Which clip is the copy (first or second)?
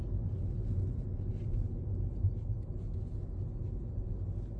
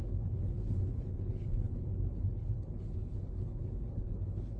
second